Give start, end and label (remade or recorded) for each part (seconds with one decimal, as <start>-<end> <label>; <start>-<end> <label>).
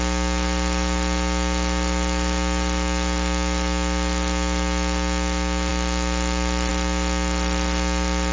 0.0-8.3 recorded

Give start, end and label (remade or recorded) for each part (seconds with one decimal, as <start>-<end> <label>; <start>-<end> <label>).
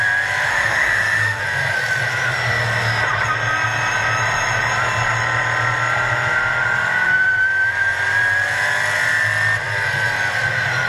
0.0-0.5 recorded; 0.5-1.4 remade; 1.4-10.9 recorded